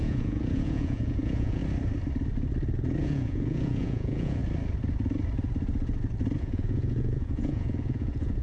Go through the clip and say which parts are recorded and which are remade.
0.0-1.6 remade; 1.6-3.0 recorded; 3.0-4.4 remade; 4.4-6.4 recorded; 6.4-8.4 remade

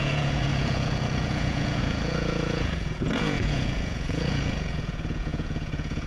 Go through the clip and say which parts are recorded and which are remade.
0.0-6.1 remade